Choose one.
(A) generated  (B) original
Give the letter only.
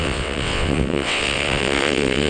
A